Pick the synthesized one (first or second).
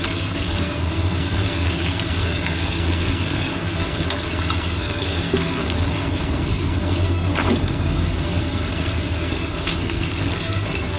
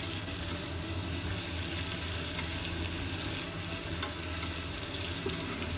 first